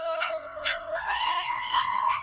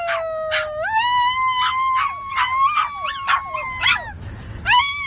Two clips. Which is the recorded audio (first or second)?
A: second